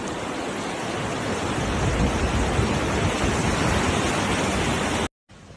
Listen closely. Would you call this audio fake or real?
real